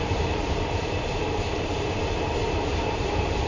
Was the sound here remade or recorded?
remade